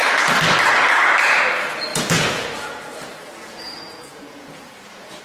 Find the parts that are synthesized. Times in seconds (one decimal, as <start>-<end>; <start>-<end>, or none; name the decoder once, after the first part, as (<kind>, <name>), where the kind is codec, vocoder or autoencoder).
1.9-5.2 (vocoder, Vocos)